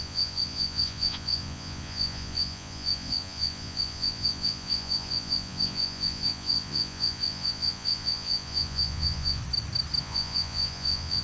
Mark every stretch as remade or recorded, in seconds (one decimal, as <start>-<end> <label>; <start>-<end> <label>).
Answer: 0.0-9.4 remade; 9.4-10.0 recorded; 10.0-11.2 remade